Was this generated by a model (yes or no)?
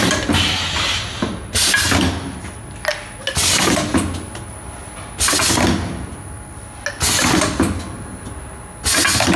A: no